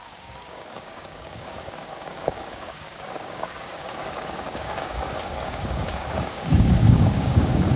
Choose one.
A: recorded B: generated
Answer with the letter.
B